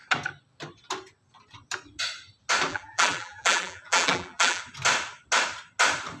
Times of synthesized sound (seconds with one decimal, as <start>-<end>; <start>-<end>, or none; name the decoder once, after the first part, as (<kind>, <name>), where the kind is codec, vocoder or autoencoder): 2.7-4.6 (vocoder, BigVGAN v2)